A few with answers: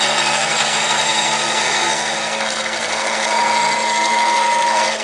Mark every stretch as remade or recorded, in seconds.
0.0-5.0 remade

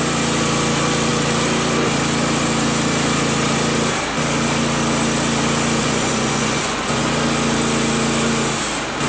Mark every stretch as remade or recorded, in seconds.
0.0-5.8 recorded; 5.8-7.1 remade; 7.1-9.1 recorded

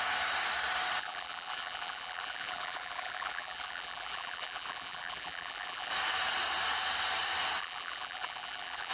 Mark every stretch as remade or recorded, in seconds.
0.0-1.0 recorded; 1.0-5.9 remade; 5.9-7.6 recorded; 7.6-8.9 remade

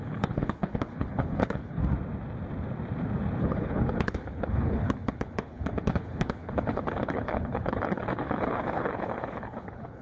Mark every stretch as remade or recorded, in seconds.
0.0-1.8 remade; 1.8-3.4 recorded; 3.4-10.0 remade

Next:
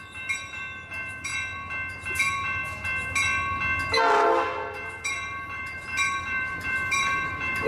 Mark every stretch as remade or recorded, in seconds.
0.0-1.3 remade; 1.3-1.9 recorded; 1.9-2.6 remade; 2.6-5.1 recorded; 5.1-7.7 remade

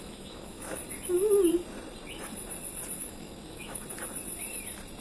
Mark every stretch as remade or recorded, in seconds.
0.0-0.8 remade; 0.8-3.0 recorded; 3.0-3.8 remade; 3.8-5.0 recorded

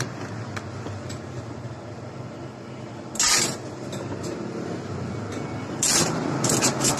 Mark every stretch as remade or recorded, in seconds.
0.0-7.0 recorded